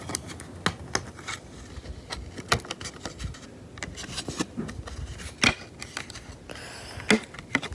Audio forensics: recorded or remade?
recorded